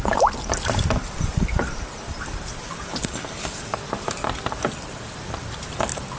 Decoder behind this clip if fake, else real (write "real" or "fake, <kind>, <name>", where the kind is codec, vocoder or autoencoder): fake, vocoder, BigVGAN v2